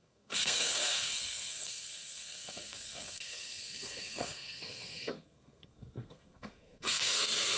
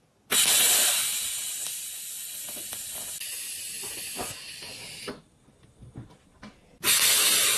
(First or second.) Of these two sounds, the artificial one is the first